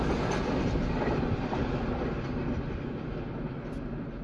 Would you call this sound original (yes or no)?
yes